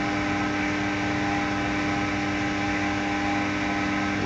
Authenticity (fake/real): real